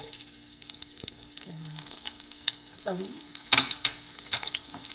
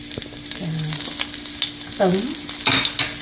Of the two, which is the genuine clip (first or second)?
second